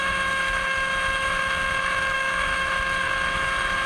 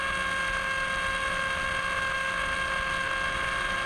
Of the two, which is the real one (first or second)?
second